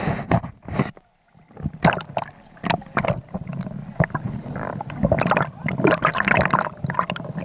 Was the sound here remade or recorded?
recorded